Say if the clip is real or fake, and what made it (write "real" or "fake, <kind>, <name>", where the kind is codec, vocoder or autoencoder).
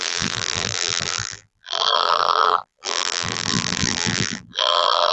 fake, vocoder, BigVGAN v2